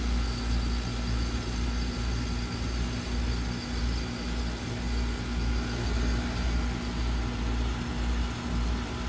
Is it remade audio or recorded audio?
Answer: recorded